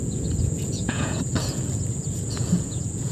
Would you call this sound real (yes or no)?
no